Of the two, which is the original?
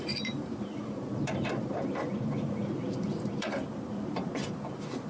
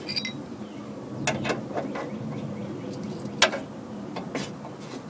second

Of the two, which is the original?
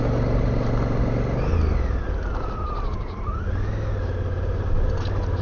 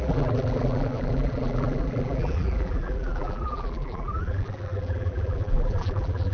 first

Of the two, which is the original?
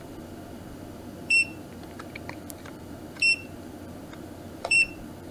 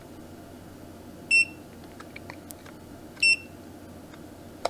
second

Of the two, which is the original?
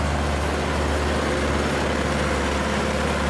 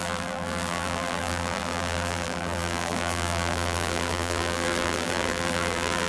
first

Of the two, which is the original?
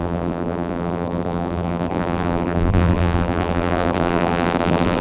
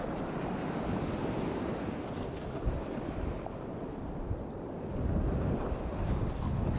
second